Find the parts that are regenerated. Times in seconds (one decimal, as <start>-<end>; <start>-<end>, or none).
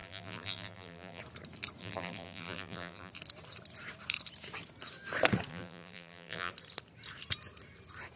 0.0-1.2; 1.8-3.1; 5.5-6.5